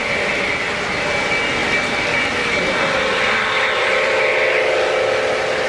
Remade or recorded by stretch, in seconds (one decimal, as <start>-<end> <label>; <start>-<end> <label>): 0.0-1.6 recorded; 1.6-4.3 remade; 4.3-5.7 recorded